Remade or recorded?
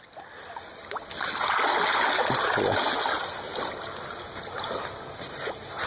recorded